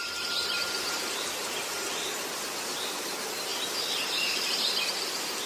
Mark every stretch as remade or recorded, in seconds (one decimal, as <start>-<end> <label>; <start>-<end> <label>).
0.0-5.5 recorded